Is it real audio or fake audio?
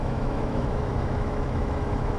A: fake